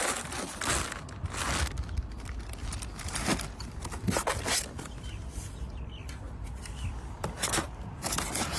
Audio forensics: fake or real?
real